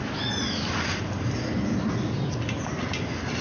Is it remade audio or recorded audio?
recorded